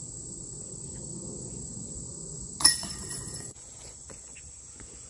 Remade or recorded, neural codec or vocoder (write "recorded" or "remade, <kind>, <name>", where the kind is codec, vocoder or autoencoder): remade, vocoder, Vocos